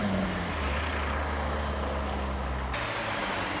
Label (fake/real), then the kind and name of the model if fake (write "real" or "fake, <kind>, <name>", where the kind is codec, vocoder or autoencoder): real